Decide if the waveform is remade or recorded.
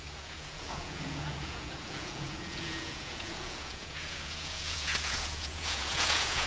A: remade